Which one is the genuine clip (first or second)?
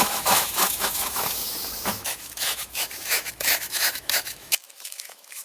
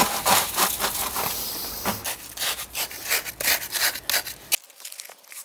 second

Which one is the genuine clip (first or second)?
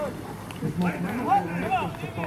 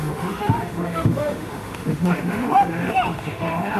first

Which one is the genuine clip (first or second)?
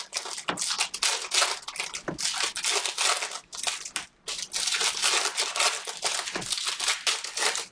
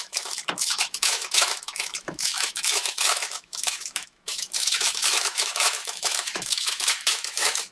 first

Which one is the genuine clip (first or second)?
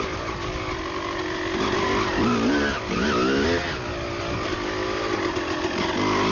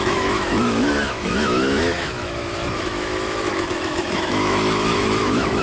first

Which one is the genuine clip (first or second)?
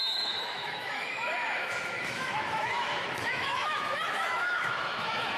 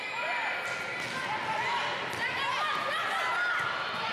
second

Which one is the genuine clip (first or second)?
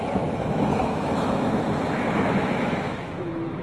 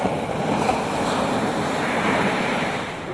second